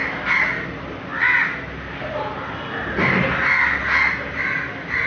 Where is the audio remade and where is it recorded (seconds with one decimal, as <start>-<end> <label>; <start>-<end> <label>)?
0.0-5.1 recorded